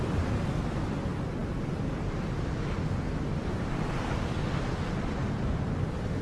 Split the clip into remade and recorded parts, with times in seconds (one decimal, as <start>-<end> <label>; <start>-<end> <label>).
0.0-6.2 recorded